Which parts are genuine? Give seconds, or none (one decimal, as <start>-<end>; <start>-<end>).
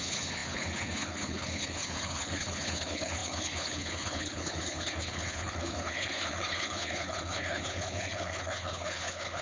none